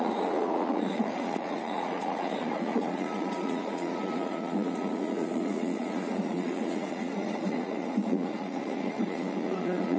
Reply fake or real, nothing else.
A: fake